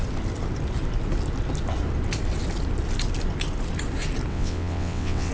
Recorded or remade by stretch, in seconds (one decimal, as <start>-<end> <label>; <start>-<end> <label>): 0.0-4.3 recorded; 4.3-5.3 remade